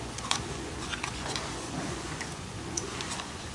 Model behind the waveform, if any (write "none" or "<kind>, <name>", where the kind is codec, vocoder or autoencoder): vocoder, Vocos